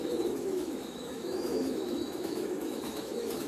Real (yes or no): no